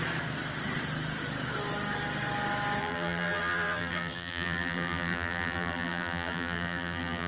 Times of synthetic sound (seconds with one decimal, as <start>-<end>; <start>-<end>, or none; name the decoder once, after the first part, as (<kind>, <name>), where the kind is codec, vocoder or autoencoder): 2.8-7.3 (vocoder, BigVGAN v2)